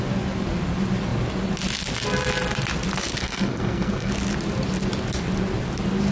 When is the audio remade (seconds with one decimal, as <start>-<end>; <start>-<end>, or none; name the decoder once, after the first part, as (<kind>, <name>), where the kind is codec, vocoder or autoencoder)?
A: 3.2-4.1 (codec, SNAC)